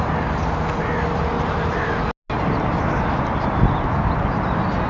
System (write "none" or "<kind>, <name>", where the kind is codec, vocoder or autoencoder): none